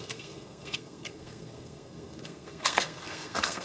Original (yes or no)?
no